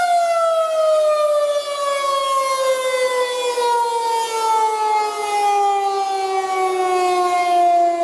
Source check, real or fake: real